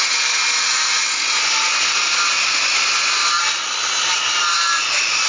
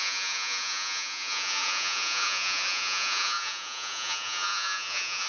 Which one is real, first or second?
first